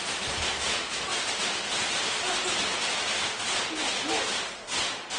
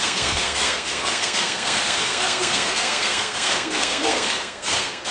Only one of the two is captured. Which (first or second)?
first